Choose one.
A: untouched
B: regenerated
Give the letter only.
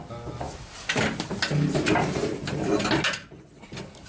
A